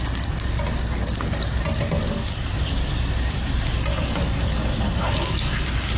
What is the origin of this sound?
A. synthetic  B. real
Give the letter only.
B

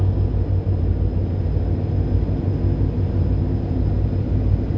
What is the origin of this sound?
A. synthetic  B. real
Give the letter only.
B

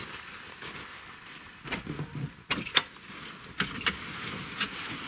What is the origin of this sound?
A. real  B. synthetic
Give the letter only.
A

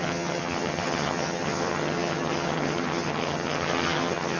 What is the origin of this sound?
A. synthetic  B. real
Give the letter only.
A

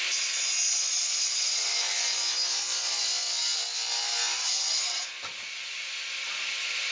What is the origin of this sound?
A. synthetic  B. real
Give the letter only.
B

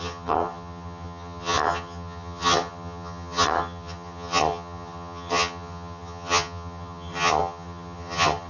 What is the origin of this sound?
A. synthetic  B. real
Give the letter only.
A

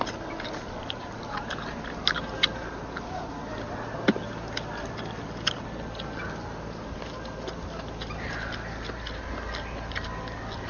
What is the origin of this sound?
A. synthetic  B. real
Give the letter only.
B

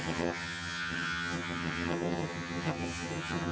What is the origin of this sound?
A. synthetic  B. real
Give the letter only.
A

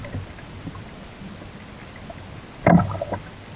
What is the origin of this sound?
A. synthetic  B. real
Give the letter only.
B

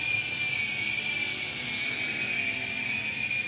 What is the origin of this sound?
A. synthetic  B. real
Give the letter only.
B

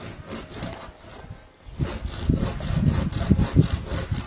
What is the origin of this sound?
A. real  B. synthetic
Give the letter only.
A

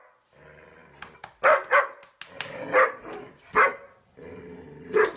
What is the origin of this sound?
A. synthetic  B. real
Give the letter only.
B